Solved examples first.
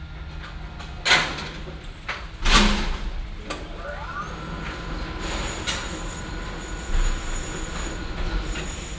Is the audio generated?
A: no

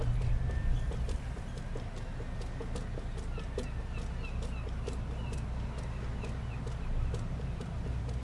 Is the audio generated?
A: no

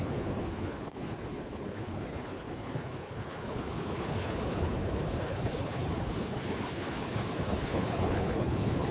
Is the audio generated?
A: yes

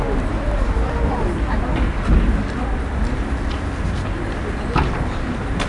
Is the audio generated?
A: no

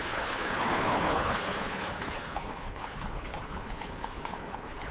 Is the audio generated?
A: yes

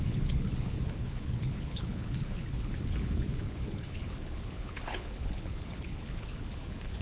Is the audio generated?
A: yes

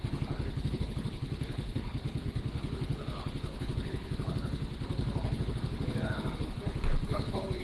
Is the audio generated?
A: yes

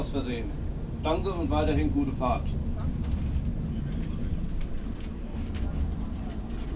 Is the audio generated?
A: no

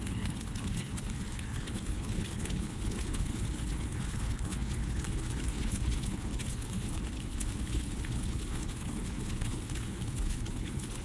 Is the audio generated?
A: yes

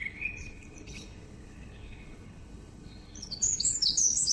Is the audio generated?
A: yes